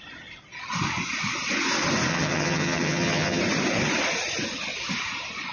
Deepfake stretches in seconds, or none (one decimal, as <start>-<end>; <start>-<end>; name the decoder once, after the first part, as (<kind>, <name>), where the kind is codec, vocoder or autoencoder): 2.1-3.4 (vocoder, HiFi-GAN)